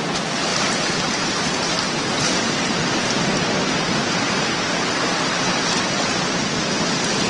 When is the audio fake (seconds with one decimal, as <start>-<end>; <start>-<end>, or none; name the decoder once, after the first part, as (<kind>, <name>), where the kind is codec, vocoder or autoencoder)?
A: none